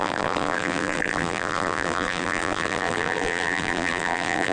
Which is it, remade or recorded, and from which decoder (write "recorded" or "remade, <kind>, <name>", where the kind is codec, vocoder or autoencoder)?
remade, vocoder, BigVGAN v2